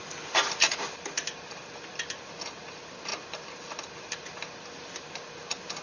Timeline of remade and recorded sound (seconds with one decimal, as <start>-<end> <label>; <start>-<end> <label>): 0.0-1.9 remade; 1.9-3.1 recorded; 3.1-4.1 remade; 4.1-5.8 recorded